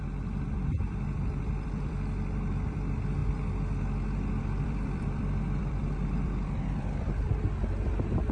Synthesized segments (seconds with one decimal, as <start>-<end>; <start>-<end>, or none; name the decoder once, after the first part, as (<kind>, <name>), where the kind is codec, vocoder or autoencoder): 0.0-8.3 (vocoder, BigVGAN v2)